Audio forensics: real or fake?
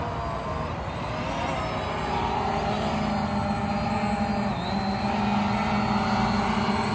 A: real